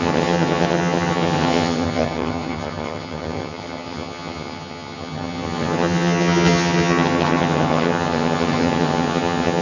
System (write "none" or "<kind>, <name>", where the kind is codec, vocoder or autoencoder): vocoder, HiFi-GAN